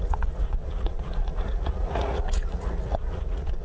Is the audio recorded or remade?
remade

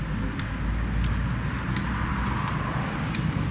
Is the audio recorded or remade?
recorded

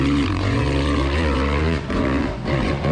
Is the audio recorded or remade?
remade